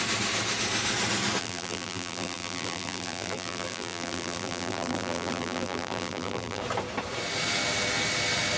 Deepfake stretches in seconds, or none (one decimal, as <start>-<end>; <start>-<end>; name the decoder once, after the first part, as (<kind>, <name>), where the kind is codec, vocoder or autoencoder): 1.4-6.6 (vocoder, BigVGAN v2)